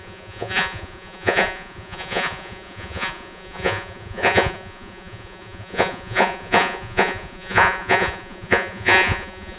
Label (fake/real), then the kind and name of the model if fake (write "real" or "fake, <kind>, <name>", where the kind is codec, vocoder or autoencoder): fake, vocoder, Vocos